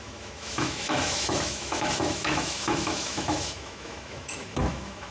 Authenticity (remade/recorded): remade